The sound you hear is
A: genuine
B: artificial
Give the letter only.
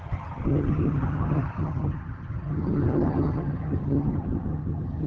B